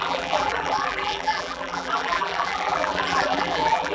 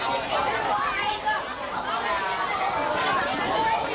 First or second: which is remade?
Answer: first